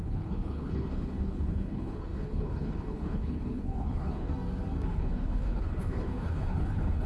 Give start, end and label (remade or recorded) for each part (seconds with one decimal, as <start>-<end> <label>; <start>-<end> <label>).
0.0-4.3 remade; 4.3-4.9 recorded; 4.9-7.1 remade